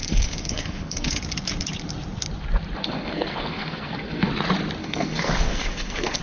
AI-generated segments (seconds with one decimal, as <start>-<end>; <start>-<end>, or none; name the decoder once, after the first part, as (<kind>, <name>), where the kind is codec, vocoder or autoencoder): 0.0-1.2 (codec, SNAC); 2.8-4.3; 4.8-6.2